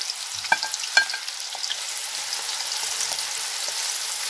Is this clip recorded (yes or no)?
yes